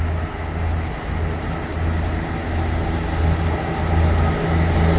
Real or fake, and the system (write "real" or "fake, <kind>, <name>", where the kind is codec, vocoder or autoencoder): real